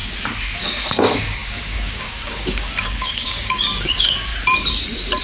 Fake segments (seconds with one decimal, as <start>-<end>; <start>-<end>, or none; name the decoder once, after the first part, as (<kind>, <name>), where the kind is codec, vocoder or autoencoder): 0.6-4.3 (codec, DAC)